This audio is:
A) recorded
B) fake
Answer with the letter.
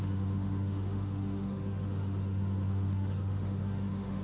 B